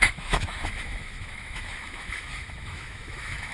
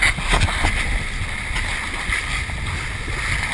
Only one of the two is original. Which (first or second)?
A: second